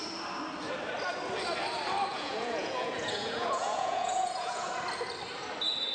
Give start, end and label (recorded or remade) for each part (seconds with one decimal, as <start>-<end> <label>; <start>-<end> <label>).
0.0-2.1 recorded; 2.1-4.7 remade; 4.7-5.9 recorded